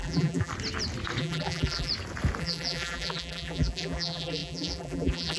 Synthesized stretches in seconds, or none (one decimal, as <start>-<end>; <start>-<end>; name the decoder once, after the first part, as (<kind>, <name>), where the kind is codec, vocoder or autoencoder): 0.0-0.5 (vocoder, BigVGAN v2); 1.2-1.9; 2.4-5.4